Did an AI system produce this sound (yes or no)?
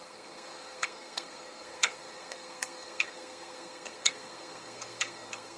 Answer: yes